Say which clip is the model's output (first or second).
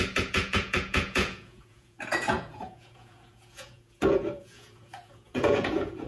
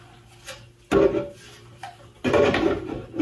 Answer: first